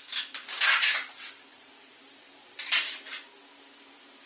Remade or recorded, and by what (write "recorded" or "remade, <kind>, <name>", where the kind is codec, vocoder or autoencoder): recorded